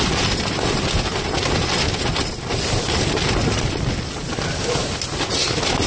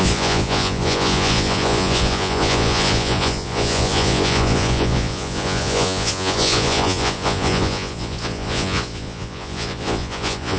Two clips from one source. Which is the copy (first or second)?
second